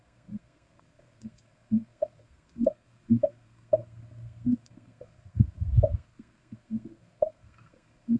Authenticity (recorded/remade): remade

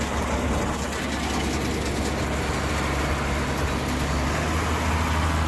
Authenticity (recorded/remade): recorded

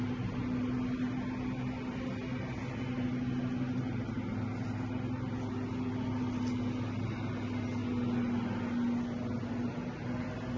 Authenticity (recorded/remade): recorded